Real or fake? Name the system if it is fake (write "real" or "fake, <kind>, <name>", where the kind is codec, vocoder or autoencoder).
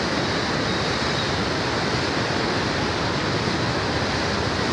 real